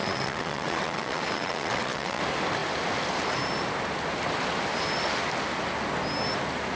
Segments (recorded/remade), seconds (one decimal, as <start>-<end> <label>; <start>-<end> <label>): 0.0-2.2 remade; 2.2-6.8 recorded

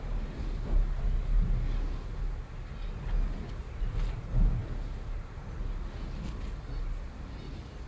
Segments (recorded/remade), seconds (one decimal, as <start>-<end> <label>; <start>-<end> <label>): 0.0-7.9 recorded

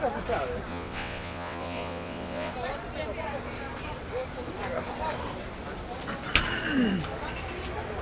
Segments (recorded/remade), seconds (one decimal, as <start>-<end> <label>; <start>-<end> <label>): 0.0-0.7 recorded; 0.7-2.5 remade; 2.5-8.0 recorded

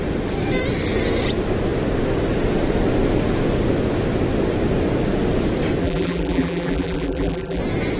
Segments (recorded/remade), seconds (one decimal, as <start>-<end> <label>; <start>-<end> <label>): 0.0-5.8 recorded; 5.8-7.6 remade; 7.6-8.0 recorded

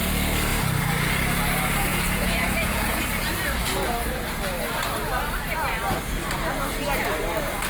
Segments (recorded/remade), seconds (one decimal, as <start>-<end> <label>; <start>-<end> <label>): 0.0-1.9 recorded; 1.9-3.0 remade; 3.0-7.7 recorded

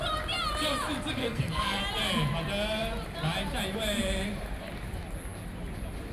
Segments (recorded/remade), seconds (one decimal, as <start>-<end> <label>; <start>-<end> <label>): 0.0-1.2 recorded; 1.2-1.8 remade; 1.8-6.1 recorded